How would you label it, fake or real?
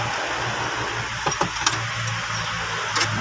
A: real